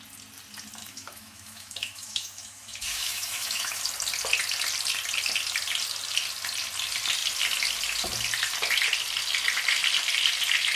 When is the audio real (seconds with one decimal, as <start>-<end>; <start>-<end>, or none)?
0.0-0.8; 3.8-10.8